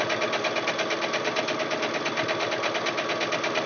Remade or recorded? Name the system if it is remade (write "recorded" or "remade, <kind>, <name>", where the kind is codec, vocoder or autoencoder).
recorded